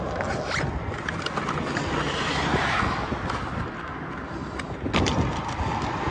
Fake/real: real